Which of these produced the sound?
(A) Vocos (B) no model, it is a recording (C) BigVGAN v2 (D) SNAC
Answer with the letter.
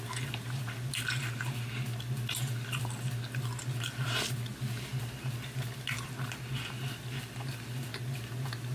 B